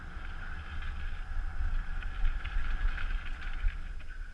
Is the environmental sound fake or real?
real